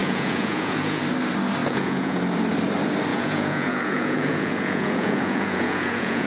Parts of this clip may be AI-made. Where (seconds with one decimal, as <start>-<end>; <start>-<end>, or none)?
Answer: 0.0-1.0; 1.6-2.2; 3.1-6.3